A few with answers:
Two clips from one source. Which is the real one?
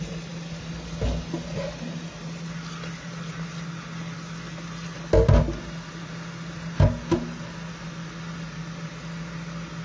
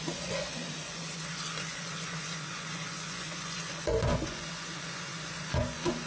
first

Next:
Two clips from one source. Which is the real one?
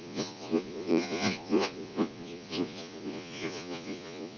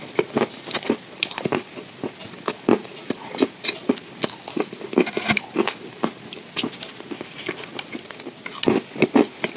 second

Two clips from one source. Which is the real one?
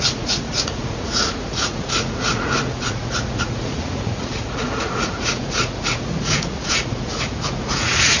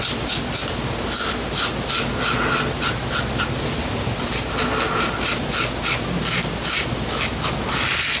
second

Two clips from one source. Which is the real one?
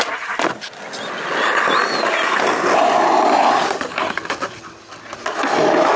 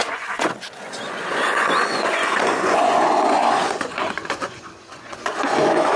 first